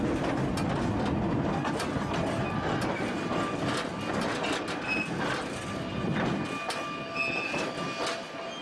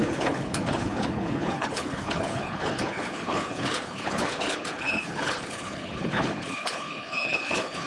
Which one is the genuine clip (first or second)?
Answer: first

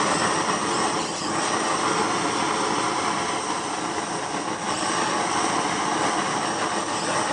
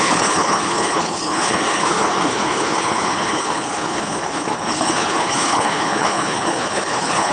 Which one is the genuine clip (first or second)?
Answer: first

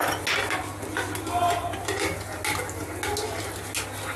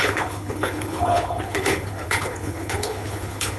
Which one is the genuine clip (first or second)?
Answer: first